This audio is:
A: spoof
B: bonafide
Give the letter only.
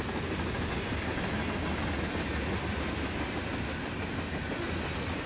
B